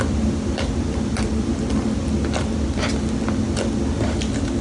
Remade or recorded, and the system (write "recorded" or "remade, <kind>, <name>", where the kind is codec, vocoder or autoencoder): recorded